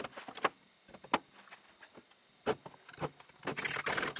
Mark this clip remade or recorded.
recorded